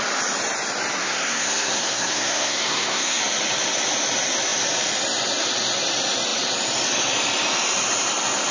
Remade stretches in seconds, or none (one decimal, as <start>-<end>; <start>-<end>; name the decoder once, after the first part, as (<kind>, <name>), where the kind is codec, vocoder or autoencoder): 1.0-3.2 (codec, SNAC)